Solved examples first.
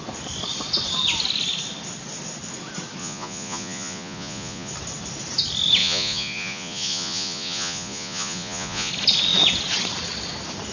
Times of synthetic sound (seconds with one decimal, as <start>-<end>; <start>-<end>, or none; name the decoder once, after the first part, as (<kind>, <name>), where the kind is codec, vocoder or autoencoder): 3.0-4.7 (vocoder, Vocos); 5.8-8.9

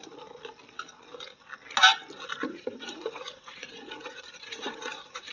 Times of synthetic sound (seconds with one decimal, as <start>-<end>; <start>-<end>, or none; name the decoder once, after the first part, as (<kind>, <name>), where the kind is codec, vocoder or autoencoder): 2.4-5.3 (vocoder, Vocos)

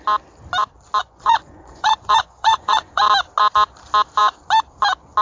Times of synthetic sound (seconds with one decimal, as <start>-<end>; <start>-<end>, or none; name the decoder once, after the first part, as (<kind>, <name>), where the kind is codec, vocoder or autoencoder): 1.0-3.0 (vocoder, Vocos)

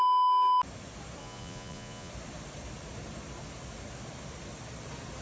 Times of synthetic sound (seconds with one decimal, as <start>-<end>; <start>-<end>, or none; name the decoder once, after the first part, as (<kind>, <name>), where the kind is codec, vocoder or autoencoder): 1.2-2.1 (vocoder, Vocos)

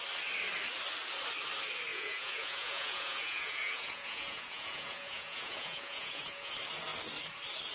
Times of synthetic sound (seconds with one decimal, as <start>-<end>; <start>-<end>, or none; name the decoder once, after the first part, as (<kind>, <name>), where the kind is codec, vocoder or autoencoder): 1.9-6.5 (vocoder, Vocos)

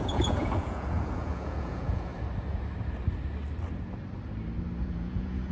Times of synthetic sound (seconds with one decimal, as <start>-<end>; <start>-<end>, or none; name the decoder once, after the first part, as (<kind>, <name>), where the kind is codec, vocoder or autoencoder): 0.0-2.1 (vocoder, Vocos); 4.8-5.5

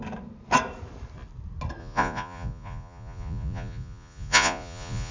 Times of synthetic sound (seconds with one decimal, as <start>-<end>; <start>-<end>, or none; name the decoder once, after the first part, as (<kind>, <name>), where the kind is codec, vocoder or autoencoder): 1.8-5.1 (vocoder, Vocos)

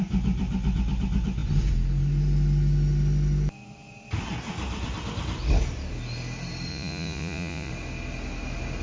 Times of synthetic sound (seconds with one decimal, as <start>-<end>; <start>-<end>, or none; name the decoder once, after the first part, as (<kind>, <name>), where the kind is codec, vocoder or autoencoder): 6.7-7.7 (vocoder, Vocos)